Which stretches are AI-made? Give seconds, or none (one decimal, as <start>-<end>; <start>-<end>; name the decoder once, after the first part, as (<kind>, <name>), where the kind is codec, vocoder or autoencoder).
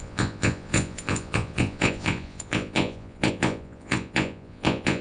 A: 0.0-5.0 (vocoder, Vocos)